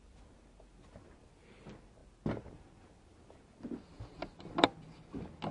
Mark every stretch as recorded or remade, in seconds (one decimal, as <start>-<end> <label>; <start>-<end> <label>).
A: 0.0-5.5 recorded

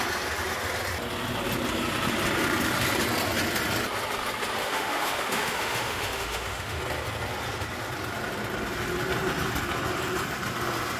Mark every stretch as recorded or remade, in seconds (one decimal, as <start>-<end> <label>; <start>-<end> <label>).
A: 0.0-4.6 recorded; 4.6-6.8 remade; 6.8-11.0 recorded

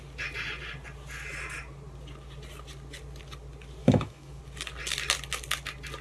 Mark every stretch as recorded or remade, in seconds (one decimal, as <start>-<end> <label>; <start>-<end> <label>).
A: 0.0-3.8 recorded; 3.8-4.4 remade; 4.4-6.0 recorded

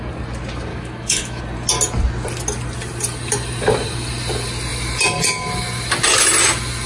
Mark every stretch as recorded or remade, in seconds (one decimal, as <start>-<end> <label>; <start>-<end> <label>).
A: 0.0-0.7 recorded; 0.7-1.4 remade; 1.4-6.9 recorded